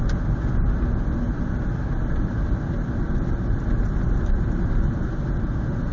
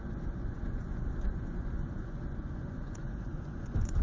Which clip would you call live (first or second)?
first